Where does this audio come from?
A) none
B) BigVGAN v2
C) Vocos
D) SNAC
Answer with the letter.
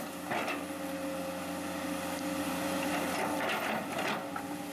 A